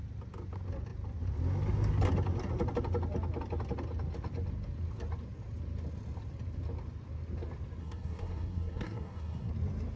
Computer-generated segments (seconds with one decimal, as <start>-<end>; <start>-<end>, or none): 7.8-9.5